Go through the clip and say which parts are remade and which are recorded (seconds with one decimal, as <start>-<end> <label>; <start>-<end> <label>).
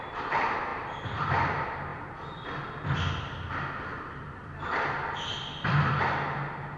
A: 0.0-0.7 recorded; 0.7-1.3 remade; 1.3-1.9 recorded; 1.9-6.0 remade; 6.0-6.8 recorded